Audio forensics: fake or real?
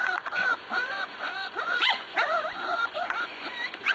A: fake